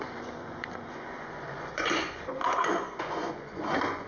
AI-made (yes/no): yes